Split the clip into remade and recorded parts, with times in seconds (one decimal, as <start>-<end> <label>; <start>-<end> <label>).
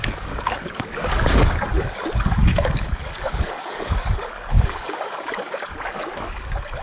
0.0-6.8 remade